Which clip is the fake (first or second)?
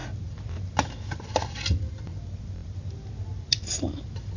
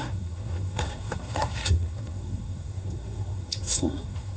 second